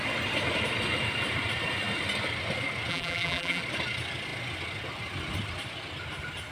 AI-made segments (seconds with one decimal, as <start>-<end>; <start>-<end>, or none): 2.9-3.6